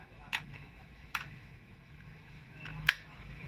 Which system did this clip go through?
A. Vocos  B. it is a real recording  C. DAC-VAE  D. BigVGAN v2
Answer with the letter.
C